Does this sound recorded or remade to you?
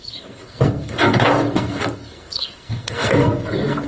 remade